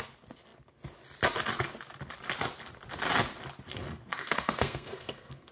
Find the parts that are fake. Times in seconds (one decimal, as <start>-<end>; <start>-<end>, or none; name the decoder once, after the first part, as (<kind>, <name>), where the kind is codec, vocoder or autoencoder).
4.2-5.5 (codec, SNAC)